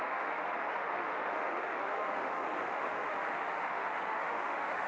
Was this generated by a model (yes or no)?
yes